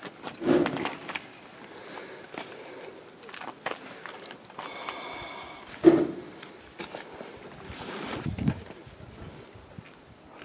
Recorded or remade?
recorded